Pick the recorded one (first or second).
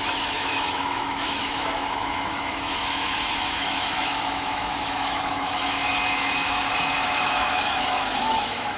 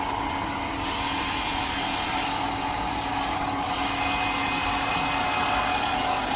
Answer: second